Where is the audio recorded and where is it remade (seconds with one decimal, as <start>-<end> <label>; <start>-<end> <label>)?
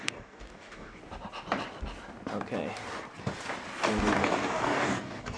0.0-1.0 remade; 1.0-4.2 recorded; 4.2-5.4 remade